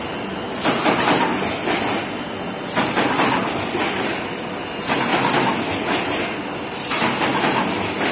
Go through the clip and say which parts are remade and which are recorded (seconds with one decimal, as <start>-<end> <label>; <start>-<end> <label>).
0.0-8.1 recorded